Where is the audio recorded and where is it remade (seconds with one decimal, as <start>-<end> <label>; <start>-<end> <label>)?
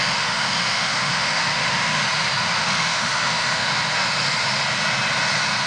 0.0-2.0 remade; 2.0-2.6 recorded; 2.6-3.7 remade; 3.7-5.7 recorded